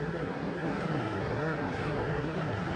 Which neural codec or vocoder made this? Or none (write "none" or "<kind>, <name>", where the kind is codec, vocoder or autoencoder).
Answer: codec, SNAC